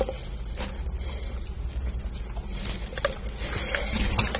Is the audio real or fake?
real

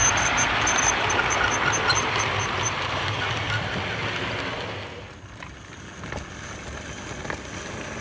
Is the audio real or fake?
real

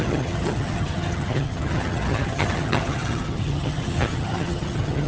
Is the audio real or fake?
fake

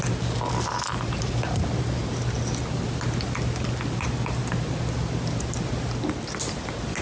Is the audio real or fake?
real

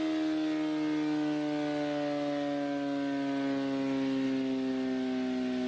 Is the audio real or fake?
real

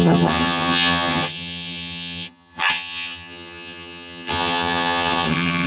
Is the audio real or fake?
fake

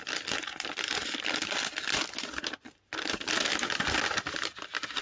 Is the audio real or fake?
real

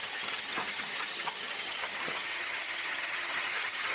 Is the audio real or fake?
fake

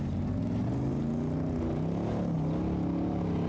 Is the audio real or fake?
real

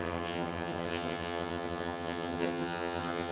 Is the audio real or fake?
fake